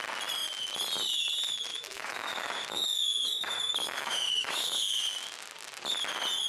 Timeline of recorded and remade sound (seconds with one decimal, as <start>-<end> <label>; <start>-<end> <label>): 0.0-1.7 recorded; 1.7-5.0 remade; 5.0-6.5 recorded